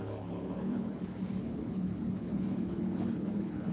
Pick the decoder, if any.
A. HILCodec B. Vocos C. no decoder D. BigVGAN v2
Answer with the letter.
A